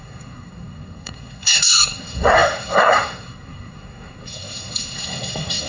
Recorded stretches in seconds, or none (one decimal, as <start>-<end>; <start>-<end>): none